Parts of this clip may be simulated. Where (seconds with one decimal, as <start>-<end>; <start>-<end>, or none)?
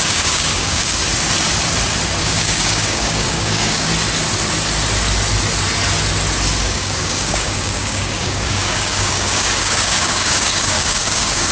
0.0-1.0; 2.2-3.9; 6.6-11.5